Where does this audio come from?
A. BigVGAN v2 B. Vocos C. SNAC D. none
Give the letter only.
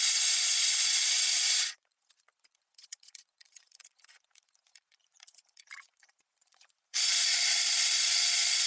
B